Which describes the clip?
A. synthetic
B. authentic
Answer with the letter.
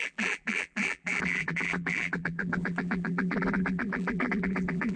A